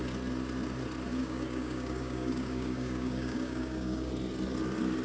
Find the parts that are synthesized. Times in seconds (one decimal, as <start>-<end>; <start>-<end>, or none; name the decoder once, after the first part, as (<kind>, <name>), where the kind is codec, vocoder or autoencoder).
1.1-4.1 (codec, DAC)